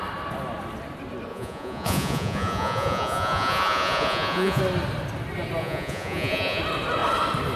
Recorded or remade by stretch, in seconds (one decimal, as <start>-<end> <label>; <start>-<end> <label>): 0.0-1.3 recorded; 1.3-4.6 remade; 4.6-5.6 recorded; 5.6-6.6 remade; 6.6-7.6 recorded